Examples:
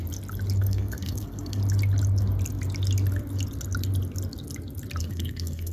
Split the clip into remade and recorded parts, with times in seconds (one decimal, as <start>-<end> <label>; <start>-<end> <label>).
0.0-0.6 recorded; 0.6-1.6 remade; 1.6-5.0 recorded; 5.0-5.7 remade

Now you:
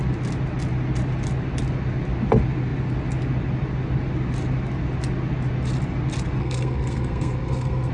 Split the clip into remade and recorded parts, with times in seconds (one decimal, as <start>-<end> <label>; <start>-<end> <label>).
0.0-6.4 recorded; 6.4-7.9 remade

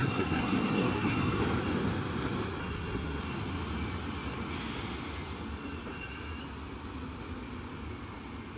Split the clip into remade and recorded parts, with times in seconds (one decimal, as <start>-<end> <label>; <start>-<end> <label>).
0.0-1.4 remade; 1.4-2.6 recorded; 2.6-3.2 remade; 3.2-8.6 recorded

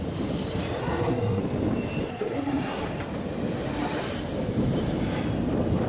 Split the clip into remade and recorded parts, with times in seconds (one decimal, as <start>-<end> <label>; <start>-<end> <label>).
0.0-0.8 recorded; 0.8-1.4 remade; 1.4-2.1 recorded; 2.1-2.8 remade; 2.8-5.9 recorded